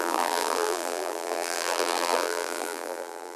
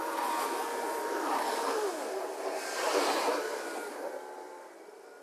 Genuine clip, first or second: second